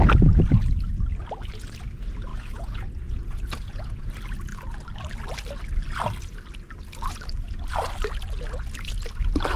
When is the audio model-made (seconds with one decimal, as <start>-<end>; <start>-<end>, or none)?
2.3-4.1